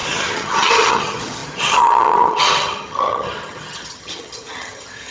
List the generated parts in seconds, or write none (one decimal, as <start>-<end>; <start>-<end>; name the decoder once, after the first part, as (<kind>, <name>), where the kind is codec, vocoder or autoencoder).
0.0-5.1 (vocoder, HiFi-GAN)